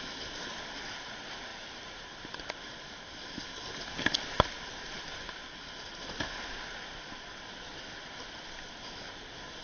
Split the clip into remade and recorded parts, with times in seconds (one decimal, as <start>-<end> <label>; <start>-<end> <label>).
0.0-1.5 recorded; 1.5-2.6 remade; 2.6-9.6 recorded